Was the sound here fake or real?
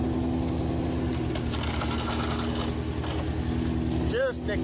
real